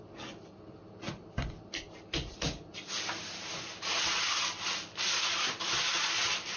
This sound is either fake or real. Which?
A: real